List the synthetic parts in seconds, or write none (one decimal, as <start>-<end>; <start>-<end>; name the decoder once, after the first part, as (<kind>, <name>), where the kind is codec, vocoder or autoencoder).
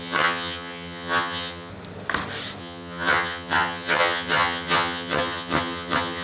0.0-1.7 (vocoder, HiFi-GAN); 2.6-6.2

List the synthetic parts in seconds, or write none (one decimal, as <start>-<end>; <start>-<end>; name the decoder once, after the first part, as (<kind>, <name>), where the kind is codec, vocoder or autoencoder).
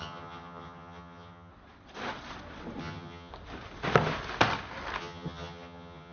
0.0-1.5 (vocoder, HiFi-GAN); 2.8-3.3; 5.0-6.1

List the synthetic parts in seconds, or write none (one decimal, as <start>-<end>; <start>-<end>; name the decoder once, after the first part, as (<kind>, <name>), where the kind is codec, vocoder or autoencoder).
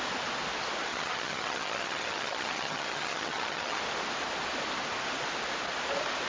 0.9-3.8 (vocoder, HiFi-GAN)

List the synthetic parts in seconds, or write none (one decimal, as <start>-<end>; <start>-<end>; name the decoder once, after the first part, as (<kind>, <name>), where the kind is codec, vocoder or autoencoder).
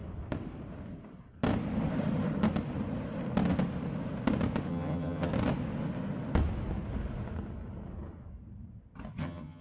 4.7-5.3 (vocoder, HiFi-GAN); 9.2-9.6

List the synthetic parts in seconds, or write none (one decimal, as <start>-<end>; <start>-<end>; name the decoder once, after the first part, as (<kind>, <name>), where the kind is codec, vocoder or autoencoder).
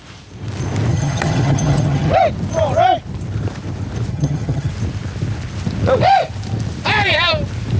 0.9-2.1 (vocoder, HiFi-GAN); 4.1-4.7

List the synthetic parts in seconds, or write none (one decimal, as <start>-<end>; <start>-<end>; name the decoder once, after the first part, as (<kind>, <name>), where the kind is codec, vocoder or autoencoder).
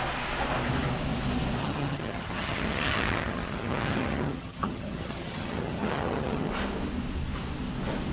1.6-6.5 (vocoder, HiFi-GAN)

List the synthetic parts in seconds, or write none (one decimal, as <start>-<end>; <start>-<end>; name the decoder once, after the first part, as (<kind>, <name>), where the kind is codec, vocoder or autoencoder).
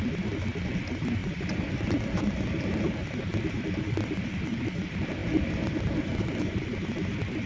none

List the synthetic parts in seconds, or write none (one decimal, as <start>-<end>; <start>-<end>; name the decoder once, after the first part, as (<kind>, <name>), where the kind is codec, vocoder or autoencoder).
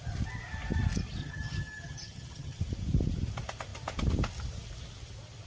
1.2-2.6 (vocoder, HiFi-GAN)